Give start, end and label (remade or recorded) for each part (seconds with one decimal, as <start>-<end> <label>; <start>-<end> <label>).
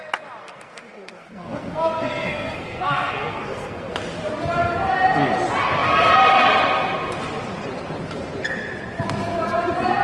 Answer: 0.0-0.4 recorded; 0.4-3.9 remade; 3.9-10.0 recorded